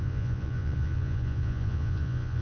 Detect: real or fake fake